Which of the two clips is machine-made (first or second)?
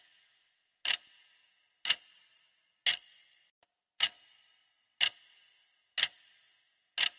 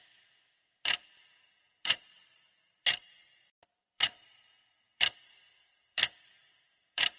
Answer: second